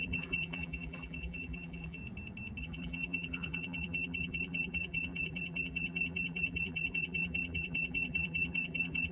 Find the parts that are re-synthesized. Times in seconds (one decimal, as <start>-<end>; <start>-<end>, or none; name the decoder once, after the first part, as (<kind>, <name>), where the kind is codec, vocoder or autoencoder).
0.0-2.0 (vocoder, BigVGAN v2); 2.6-9.1